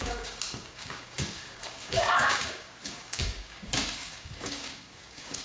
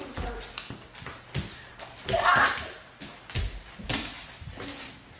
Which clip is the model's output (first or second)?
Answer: first